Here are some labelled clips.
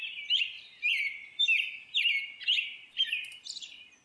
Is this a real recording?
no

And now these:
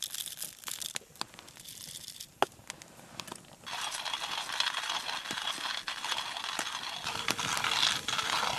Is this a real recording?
yes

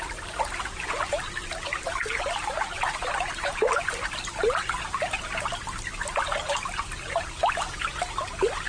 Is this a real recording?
yes